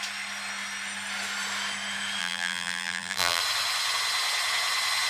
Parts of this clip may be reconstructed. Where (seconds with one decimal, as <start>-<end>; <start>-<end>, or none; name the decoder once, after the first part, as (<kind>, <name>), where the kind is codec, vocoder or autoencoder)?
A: 2.2-3.4 (vocoder, BigVGAN v2)